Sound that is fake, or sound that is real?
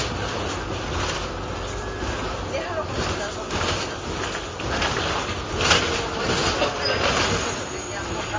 real